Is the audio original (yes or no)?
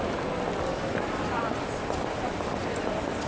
no